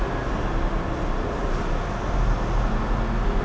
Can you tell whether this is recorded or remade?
recorded